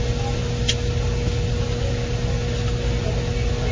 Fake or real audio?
real